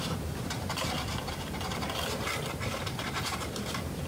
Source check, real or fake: fake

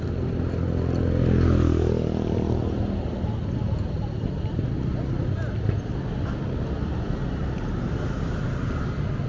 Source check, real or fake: real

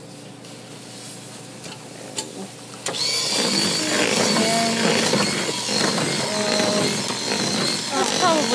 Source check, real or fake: real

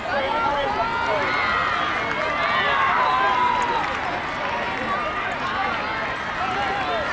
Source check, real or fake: real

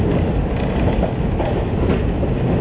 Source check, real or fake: real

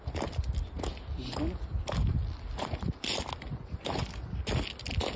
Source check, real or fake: real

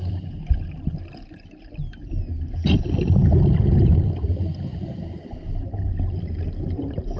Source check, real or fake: real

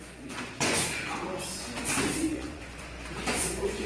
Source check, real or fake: fake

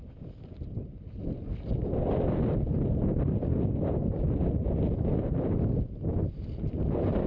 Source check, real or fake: real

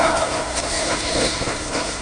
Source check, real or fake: fake